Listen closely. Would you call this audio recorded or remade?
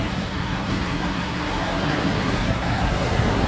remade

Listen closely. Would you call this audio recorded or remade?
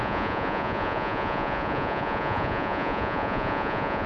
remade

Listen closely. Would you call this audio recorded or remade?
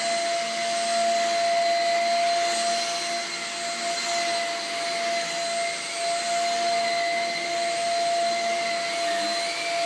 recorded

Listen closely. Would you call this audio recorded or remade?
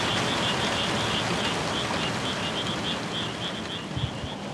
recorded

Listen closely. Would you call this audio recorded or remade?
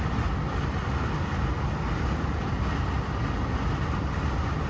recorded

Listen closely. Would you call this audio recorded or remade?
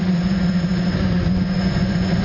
remade